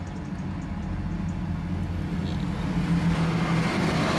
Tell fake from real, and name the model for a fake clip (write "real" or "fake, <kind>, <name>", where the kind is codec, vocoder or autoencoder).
real